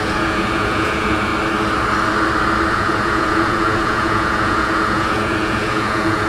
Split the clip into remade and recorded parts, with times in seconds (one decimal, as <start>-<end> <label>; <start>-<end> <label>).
0.0-1.3 remade; 1.3-2.7 recorded; 2.7-6.3 remade